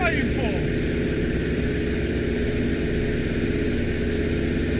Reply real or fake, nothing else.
real